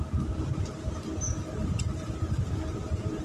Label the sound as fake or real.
real